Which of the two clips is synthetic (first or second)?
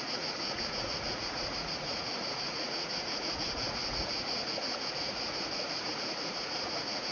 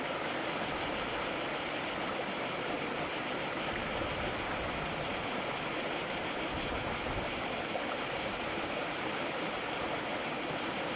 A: first